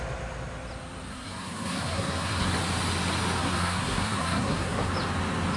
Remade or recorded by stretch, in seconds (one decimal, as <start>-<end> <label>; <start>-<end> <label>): 0.0-1.1 recorded; 1.1-2.5 remade; 2.5-3.4 recorded; 3.4-4.9 remade; 4.9-5.6 recorded